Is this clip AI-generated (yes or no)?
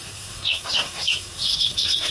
yes